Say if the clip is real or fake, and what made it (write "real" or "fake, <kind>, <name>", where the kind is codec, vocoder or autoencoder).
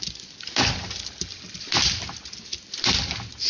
real